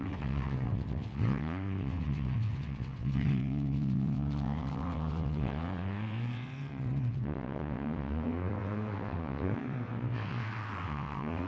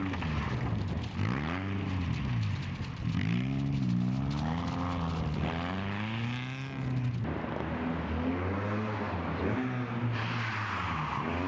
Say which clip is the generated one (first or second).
first